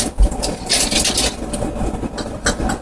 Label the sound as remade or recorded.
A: recorded